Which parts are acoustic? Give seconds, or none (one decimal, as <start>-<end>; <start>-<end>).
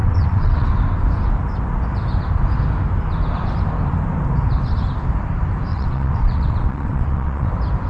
0.7-5.7; 7.5-7.9